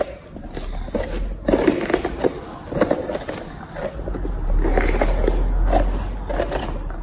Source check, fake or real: real